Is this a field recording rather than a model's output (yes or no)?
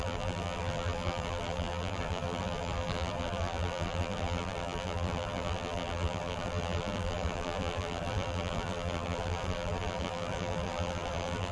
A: no